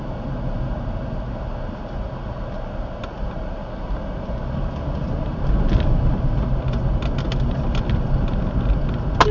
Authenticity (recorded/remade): recorded